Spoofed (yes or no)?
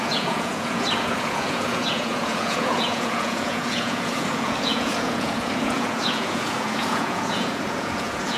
yes